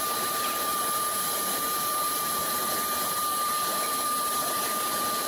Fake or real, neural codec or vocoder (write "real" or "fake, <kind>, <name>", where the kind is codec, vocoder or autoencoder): fake, vocoder, BigVGAN v2